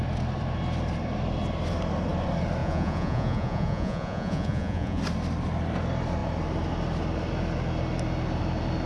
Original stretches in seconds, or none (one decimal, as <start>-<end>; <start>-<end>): 0.0-2.6; 5.0-8.9